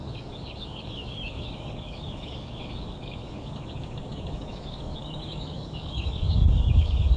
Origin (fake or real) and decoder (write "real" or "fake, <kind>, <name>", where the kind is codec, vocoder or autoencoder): fake, codec, DAC